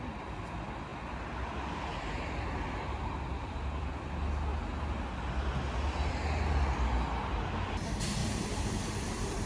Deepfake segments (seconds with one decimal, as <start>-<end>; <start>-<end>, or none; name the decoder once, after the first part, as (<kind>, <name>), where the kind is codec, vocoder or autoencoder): 8.2-9.5 (vocoder, BigVGAN v2)